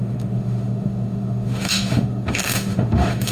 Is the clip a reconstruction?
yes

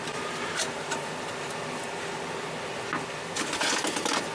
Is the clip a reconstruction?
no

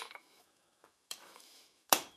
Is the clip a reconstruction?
yes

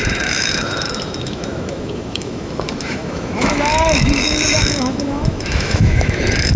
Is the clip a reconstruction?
yes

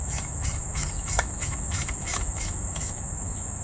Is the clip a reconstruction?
yes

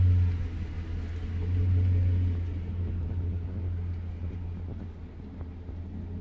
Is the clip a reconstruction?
no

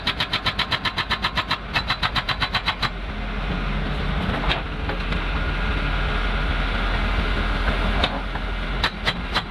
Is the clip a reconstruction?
no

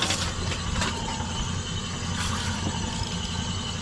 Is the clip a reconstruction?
no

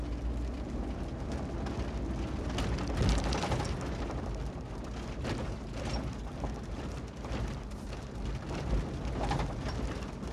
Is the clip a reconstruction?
no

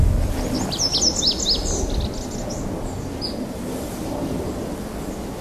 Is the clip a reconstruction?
no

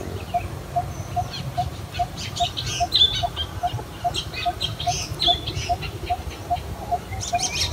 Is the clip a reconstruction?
no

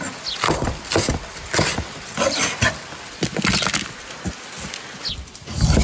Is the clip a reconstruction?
no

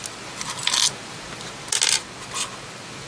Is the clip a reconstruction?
no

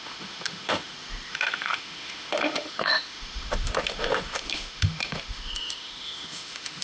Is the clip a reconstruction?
yes